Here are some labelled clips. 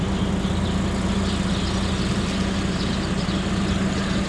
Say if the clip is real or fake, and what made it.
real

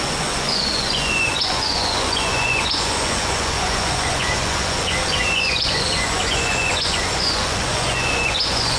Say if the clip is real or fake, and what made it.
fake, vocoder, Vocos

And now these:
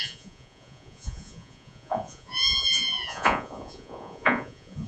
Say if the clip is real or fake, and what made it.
fake, vocoder, Vocos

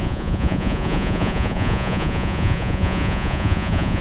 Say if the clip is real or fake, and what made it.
fake, vocoder, Vocos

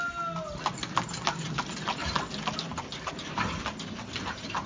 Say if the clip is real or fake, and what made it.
real